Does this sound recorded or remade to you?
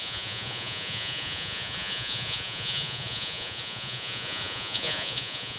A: remade